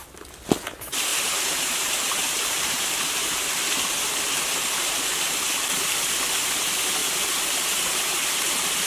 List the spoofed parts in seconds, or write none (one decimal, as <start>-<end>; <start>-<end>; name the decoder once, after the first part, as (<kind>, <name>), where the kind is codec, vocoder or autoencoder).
1.1-4.3 (vocoder, BigVGAN v2); 7.0-8.9